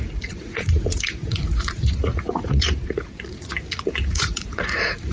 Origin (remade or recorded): remade